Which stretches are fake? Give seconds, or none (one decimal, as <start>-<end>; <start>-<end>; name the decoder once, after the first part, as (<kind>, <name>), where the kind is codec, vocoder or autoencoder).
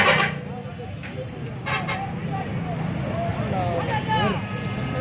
none